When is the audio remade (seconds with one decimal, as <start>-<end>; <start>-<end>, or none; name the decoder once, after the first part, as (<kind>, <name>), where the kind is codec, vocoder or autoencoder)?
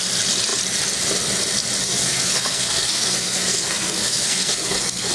1.8-5.1 (codec, SNAC)